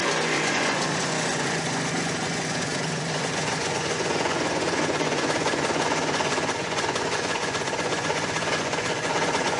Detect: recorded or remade remade